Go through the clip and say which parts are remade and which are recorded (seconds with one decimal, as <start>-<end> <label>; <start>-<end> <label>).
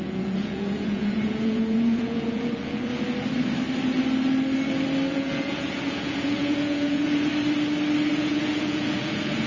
0.0-2.9 remade; 2.9-5.1 recorded; 5.1-7.3 remade; 7.3-8.1 recorded; 8.1-9.5 remade